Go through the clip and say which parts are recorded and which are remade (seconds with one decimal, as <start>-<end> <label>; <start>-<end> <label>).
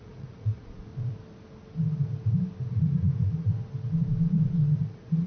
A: 0.0-0.9 remade; 0.9-2.7 recorded; 2.7-3.5 remade; 3.5-4.8 recorded; 4.8-5.3 remade